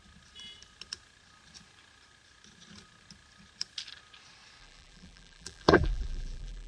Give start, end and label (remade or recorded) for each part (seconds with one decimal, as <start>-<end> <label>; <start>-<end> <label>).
0.0-4.6 recorded; 4.6-6.7 remade